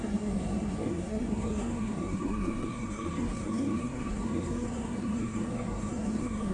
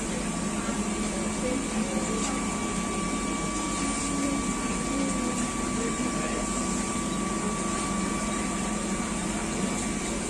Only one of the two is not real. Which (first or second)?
first